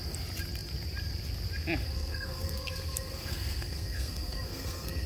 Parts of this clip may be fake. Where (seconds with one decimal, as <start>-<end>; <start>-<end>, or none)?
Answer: 1.8-5.1